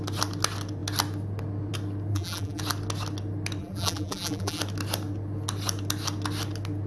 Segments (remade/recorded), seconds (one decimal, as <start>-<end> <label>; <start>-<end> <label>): 0.0-2.1 recorded; 2.1-2.6 remade; 2.6-3.6 recorded; 3.6-4.6 remade; 4.6-6.9 recorded